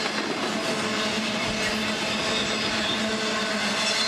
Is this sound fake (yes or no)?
no